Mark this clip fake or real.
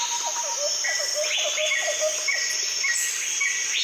real